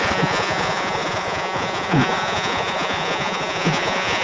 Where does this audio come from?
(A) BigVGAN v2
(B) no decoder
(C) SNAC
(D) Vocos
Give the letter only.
D